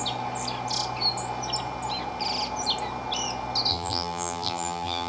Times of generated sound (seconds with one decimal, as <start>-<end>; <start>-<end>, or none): 3.7-5.1